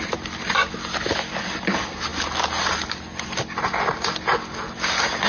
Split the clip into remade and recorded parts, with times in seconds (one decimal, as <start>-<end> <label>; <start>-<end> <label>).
0.0-5.3 recorded